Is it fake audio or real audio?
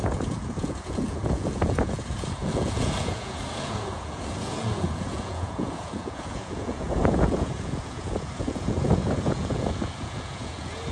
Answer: fake